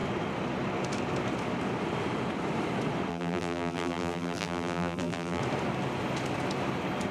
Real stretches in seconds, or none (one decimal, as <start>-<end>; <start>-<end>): 0.0-3.1; 5.4-7.1